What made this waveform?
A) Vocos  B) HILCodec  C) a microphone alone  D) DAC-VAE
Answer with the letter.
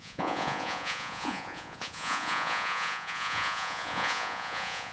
A